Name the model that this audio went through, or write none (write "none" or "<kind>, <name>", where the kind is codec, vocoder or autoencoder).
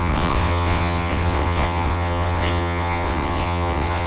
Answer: vocoder, WaveNeXt